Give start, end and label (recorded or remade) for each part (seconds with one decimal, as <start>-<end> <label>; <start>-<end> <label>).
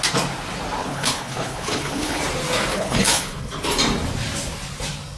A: 0.0-0.8 recorded; 0.8-2.2 remade; 2.2-2.7 recorded; 2.7-3.4 remade; 3.4-5.2 recorded